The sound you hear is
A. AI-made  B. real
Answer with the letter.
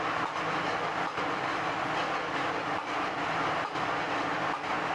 B